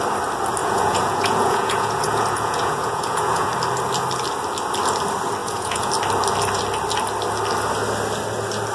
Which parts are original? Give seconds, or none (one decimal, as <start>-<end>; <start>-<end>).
0.0-0.6; 3.5-5.4; 5.9-8.7

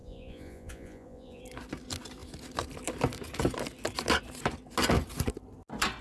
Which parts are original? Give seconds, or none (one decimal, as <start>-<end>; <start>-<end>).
1.4-6.0

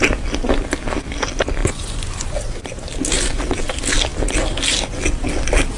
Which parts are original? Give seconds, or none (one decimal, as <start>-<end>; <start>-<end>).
0.0-1.6; 2.3-5.8

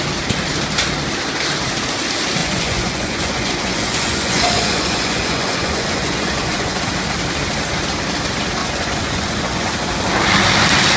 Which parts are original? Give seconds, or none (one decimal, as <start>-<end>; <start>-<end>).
0.0-2.4; 6.8-8.6; 9.7-11.0

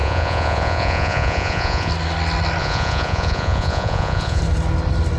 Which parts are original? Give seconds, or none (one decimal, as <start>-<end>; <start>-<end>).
1.9-2.6; 4.4-5.2